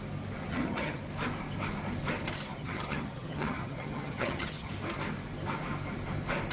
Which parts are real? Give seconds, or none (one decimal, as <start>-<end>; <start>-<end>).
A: 0.0-0.4; 1.0-2.5; 4.7-6.5